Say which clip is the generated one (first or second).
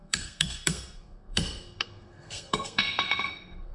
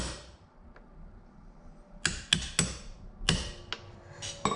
first